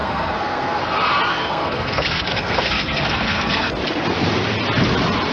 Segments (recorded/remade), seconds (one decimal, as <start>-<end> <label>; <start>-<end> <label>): 0.0-0.8 remade; 0.8-1.3 recorded; 1.3-3.7 remade; 3.7-5.3 recorded

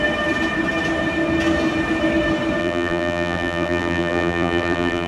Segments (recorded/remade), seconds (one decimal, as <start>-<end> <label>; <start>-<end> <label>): 0.0-2.6 recorded; 2.6-5.1 remade